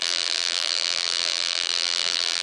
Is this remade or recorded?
remade